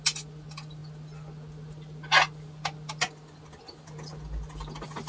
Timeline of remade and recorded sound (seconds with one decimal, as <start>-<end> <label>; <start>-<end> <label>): 0.0-5.1 recorded